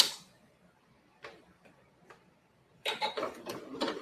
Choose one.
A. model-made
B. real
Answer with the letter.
A